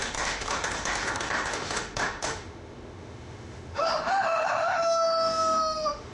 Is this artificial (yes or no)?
yes